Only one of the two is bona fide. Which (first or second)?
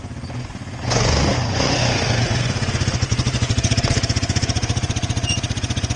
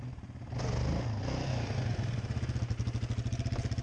second